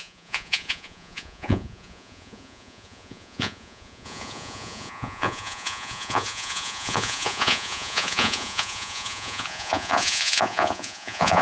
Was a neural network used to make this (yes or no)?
yes